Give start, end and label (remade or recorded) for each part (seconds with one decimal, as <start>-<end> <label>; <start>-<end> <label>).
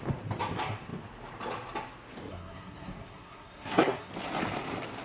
0.0-2.3 recorded; 2.3-4.1 remade; 4.1-5.0 recorded